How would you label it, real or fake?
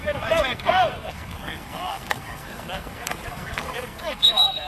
fake